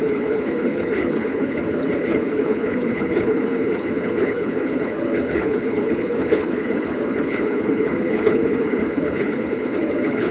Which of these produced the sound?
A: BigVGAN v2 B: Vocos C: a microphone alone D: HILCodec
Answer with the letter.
D